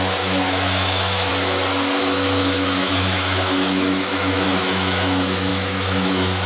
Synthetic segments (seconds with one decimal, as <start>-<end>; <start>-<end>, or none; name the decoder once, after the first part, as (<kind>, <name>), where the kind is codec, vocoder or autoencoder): 0.0-1.3 (autoencoder, DAC-VAE); 2.0-6.5